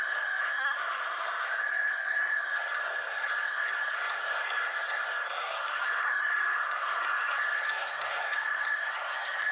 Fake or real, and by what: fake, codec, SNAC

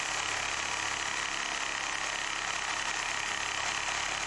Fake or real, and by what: real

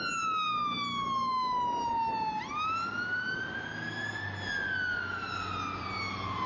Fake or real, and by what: real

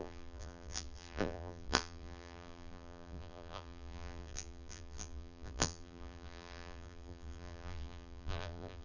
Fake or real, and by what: fake, vocoder, BigVGAN v2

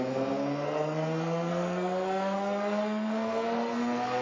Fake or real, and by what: fake, codec, SNAC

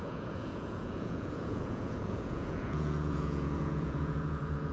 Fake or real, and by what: fake, vocoder, Vocos